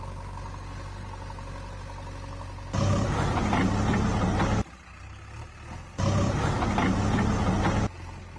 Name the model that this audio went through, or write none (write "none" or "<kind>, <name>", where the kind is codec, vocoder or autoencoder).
none